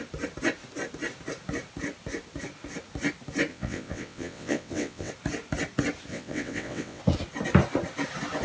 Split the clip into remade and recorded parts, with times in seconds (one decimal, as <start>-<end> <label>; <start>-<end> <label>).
0.0-3.5 recorded; 3.5-5.1 remade; 5.1-6.1 recorded; 6.1-7.0 remade; 7.0-8.4 recorded